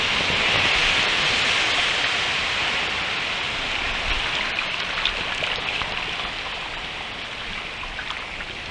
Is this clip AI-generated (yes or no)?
no